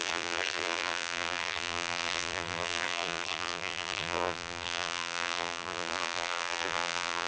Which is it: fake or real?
fake